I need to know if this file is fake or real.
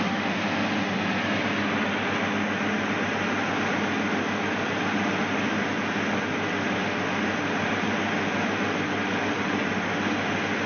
real